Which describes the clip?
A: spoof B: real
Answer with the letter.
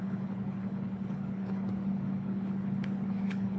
A